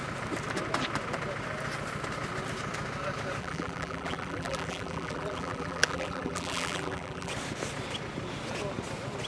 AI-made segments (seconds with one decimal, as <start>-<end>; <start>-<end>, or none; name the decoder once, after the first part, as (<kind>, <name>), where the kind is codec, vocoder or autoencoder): 3.4-7.3 (vocoder, BigVGAN v2)